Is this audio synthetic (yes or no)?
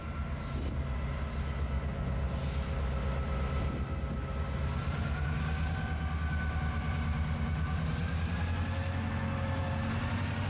no